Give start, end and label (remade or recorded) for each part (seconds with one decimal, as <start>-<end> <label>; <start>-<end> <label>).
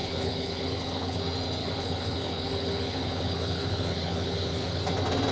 0.0-1.2 remade; 1.2-1.6 recorded; 1.6-4.8 remade; 4.8-5.3 recorded